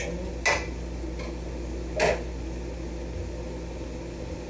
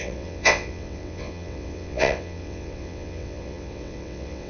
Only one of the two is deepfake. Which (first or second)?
second